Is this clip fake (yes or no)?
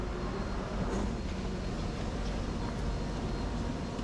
no